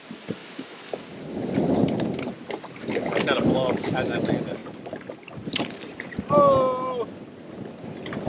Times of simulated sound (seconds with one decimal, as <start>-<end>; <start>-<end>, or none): 0.4-0.9